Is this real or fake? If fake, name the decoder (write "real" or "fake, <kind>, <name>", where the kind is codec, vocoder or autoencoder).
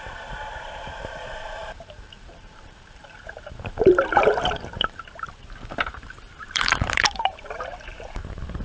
fake, vocoder, BigVGAN v2